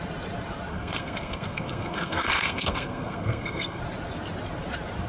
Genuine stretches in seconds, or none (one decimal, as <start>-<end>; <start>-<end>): 0.0-0.7; 3.8-5.1